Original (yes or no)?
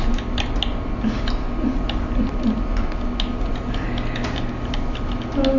yes